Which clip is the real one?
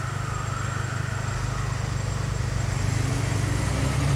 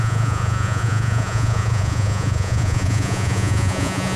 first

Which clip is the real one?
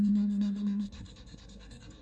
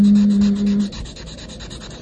second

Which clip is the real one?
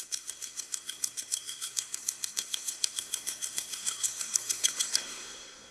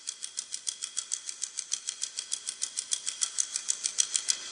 second